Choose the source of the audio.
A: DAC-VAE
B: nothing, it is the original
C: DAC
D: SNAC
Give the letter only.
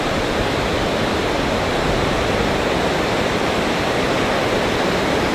B